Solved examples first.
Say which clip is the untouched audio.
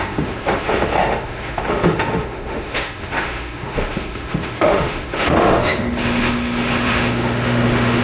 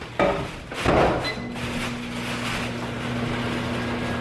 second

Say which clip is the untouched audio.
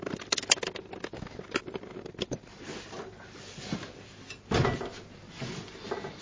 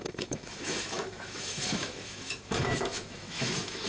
first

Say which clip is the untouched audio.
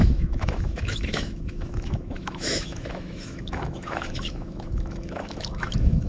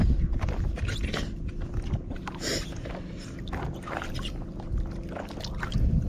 second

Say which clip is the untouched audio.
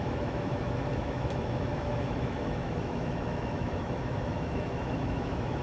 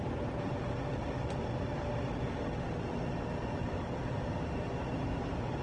second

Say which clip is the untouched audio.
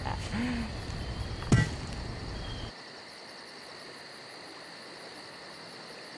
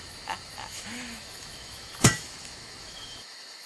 first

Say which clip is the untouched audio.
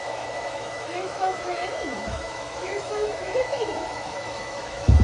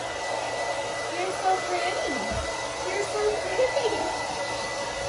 second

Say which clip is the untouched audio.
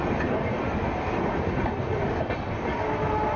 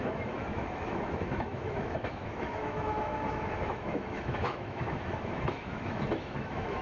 first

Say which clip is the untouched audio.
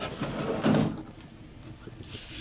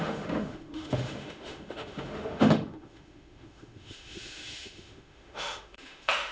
first